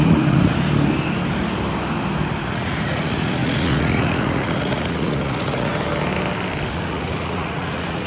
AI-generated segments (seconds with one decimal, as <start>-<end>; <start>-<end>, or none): 0.0-0.5; 2.4-5.7; 6.7-8.1